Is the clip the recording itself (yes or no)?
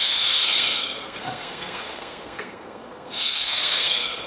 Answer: no